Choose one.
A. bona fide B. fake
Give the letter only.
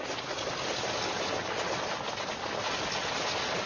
A